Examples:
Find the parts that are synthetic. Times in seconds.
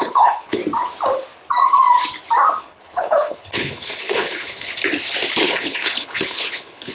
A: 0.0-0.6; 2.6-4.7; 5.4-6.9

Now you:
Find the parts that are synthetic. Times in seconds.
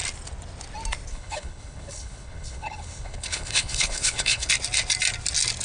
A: 1.1-4.5